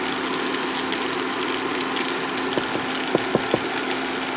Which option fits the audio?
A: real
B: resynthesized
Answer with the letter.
A